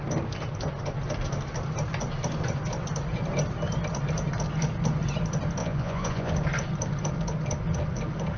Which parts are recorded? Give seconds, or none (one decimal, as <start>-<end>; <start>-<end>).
0.0-5.6; 6.3-8.4